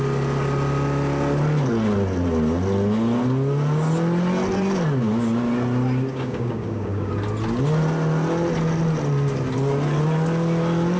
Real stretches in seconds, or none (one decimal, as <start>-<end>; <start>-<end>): 0.0-6.1; 7.1-11.0